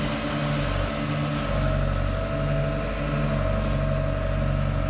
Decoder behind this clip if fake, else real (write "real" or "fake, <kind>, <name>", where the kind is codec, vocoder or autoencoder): real